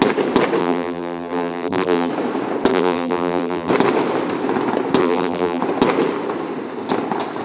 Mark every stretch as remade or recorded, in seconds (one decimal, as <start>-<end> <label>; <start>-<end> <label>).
0.0-0.6 recorded; 0.6-2.1 remade; 2.1-2.7 recorded; 2.7-3.7 remade; 3.7-5.0 recorded; 5.0-5.6 remade; 5.6-7.4 recorded